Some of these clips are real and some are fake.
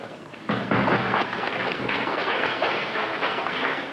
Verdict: fake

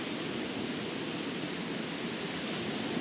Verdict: real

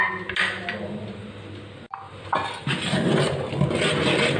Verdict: real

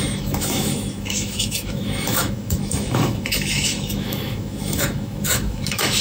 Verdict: fake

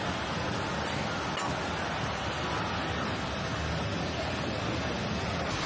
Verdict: real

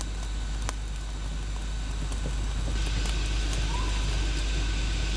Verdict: real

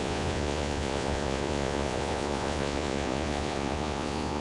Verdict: fake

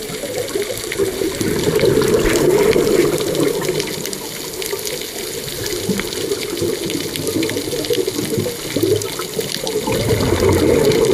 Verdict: real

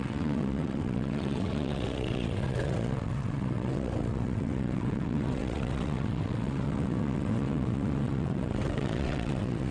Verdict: fake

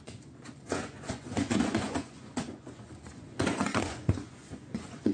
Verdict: fake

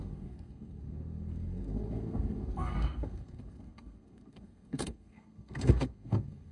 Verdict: fake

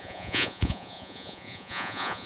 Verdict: fake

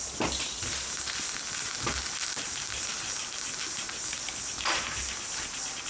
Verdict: real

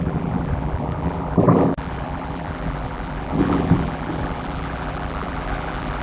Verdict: fake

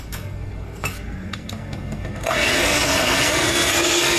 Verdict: fake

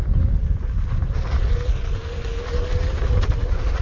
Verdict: real